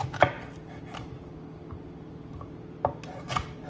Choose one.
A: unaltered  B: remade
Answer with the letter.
A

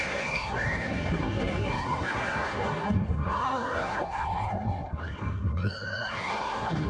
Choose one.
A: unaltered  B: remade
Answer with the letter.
B